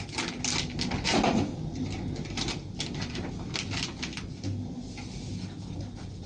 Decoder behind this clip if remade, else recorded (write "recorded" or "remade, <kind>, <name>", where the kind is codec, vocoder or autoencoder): recorded